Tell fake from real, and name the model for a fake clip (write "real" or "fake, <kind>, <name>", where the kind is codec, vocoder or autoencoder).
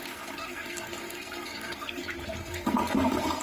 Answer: fake, codec, SNAC